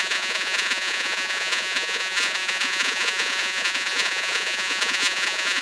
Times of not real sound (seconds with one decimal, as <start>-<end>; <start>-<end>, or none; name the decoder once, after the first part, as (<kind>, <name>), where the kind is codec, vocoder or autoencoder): 0.0-5.6 (vocoder, Vocos)

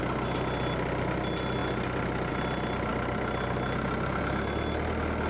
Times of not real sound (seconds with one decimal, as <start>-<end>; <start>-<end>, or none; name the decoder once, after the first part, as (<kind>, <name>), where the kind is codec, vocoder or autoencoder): none

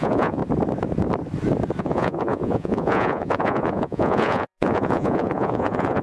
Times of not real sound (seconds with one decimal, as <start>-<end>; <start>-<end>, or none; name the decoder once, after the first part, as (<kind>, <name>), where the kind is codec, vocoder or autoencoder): 0.0-0.4 (vocoder, Vocos); 1.8-6.0

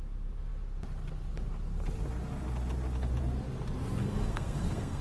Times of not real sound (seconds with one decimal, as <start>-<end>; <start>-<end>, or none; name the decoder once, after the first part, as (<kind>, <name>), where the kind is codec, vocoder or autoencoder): 4.0-5.0 (codec, SNAC)

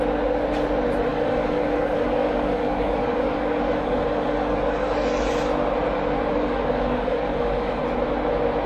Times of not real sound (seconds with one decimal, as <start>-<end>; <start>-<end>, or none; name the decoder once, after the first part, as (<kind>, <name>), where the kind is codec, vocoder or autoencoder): 1.1-5.3 (codec, DAC); 6.3-7.8